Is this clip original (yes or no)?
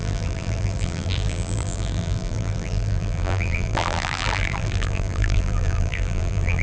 no